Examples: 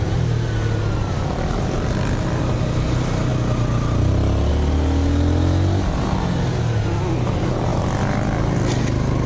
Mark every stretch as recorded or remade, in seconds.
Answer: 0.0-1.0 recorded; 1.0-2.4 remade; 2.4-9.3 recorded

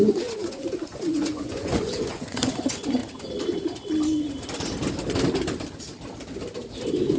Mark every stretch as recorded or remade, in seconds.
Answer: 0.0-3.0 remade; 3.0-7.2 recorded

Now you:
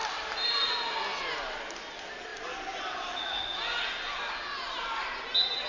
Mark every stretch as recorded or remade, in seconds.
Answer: 0.0-5.7 recorded

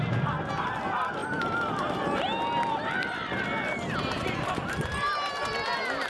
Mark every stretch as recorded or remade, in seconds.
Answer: 0.0-6.1 recorded

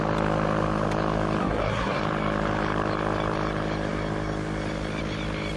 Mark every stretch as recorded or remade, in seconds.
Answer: 0.0-1.4 recorded; 1.4-2.0 remade; 2.0-5.6 recorded

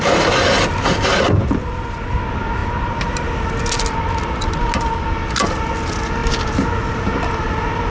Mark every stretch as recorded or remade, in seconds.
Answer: 0.0-1.1 recorded; 1.1-2.2 remade; 2.2-6.2 recorded; 6.2-6.9 remade; 6.9-7.9 recorded

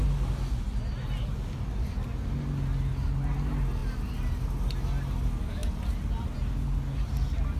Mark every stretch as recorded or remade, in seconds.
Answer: 0.0-7.6 recorded

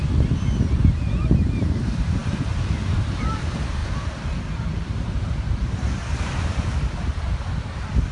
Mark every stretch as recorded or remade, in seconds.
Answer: 0.0-0.7 recorded; 0.7-8.1 remade